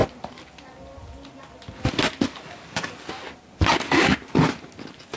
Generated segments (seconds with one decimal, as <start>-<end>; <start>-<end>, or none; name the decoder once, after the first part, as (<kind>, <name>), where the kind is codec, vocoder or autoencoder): none